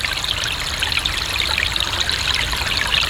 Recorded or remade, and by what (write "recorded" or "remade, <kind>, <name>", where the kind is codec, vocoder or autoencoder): recorded